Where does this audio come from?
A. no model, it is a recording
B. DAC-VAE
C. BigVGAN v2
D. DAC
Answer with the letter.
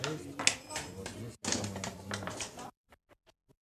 A